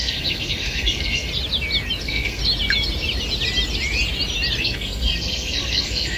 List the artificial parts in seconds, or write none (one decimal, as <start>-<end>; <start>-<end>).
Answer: 0.0-1.3; 2.0-2.4; 4.6-6.2